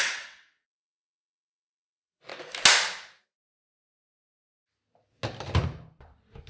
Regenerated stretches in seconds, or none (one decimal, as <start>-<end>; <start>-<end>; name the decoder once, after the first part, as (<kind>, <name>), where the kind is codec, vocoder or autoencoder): 0.0-2.3 (vocoder, WaveNeXt)